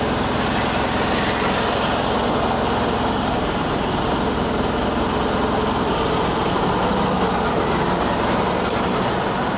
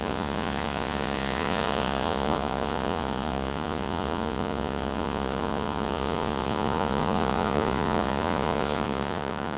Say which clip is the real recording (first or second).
first